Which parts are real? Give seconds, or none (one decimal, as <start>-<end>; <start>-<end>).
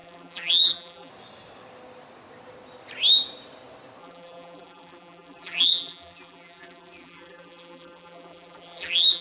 1.1-4.0